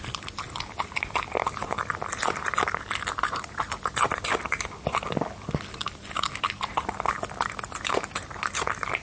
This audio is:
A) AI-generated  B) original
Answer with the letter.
B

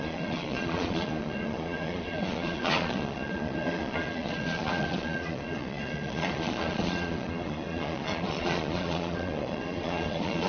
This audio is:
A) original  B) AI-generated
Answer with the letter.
B